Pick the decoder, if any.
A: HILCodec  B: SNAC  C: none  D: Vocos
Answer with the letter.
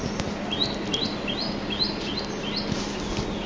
C